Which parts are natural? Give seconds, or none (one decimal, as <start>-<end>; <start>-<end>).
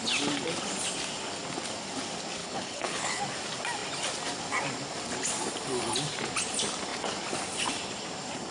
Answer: 0.0-2.4; 3.2-8.5